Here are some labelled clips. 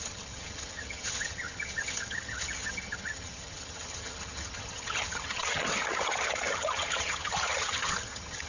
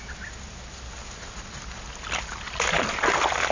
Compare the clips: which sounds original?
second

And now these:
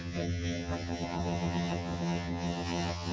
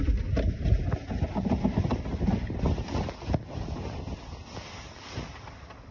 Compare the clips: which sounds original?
second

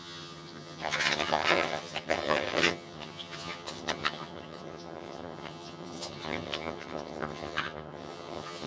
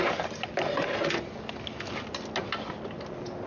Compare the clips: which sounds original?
second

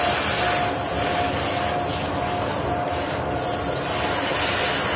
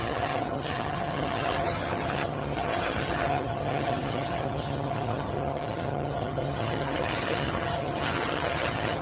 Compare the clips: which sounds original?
first